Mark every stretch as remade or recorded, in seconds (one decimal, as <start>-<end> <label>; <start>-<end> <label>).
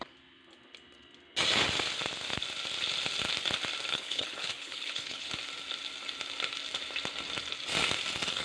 0.0-3.9 recorded; 3.9-5.3 remade; 5.3-8.4 recorded